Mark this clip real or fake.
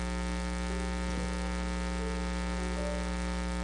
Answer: real